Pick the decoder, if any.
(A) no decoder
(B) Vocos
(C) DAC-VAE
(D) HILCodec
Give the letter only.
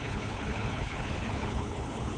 D